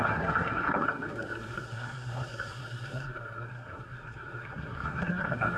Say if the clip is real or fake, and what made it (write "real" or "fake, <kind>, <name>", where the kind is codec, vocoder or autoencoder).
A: fake, codec, SNAC